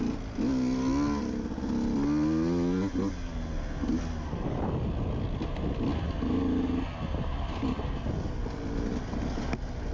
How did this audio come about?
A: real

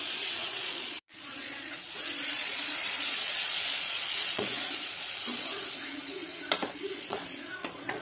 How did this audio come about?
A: fake